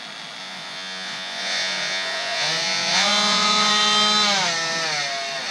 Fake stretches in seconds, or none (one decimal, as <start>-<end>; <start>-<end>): 0.4-3.7

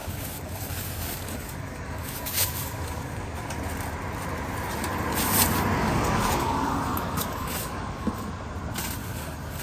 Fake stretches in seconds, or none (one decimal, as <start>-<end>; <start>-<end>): 0.0-3.5; 5.8-8.3; 9.0-9.6

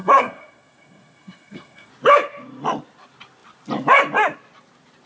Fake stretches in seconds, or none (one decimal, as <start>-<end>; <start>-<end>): 0.0-1.9

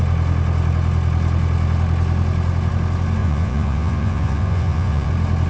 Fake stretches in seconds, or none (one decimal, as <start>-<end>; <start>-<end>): 3.2-5.1

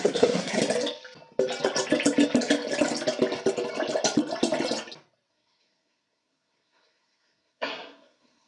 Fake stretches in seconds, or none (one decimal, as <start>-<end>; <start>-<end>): 0.0-0.6; 5.3-8.5

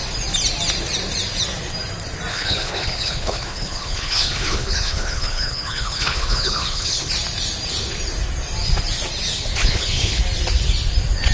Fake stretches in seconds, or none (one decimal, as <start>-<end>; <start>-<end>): 2.3-7.1; 9.6-10.2

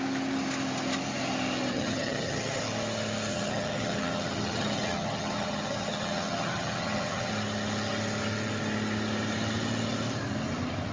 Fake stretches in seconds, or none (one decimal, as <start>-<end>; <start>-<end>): 1.7-2.6; 3.3-7.3